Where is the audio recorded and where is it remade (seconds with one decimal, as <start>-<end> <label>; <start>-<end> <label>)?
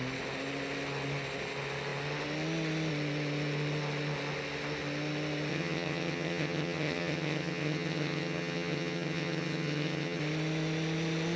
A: 0.0-5.5 recorded; 5.5-10.2 remade; 10.2-11.4 recorded